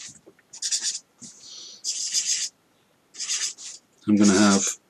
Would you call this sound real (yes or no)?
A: yes